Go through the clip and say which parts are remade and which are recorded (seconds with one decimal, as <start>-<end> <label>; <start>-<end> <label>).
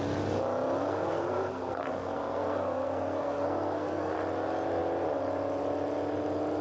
0.0-0.8 recorded; 0.8-4.1 remade; 4.1-6.6 recorded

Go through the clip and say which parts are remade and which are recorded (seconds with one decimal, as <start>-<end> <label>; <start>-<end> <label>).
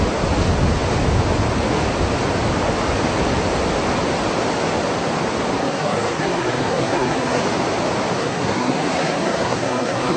0.0-5.6 recorded; 5.6-7.4 remade; 7.4-8.2 recorded; 8.2-10.2 remade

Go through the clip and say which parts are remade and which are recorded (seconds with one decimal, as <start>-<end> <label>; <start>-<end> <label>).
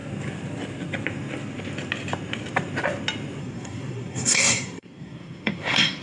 0.0-3.4 recorded; 3.4-6.0 remade